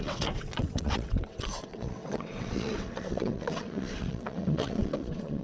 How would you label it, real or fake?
fake